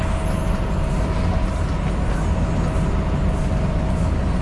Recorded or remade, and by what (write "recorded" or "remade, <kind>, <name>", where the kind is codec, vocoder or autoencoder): recorded